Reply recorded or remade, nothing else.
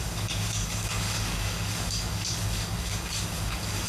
remade